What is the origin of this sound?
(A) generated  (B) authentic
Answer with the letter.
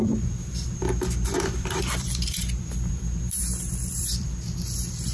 A